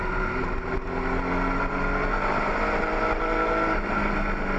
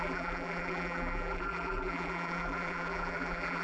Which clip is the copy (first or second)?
second